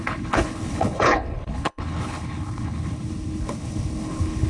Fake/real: fake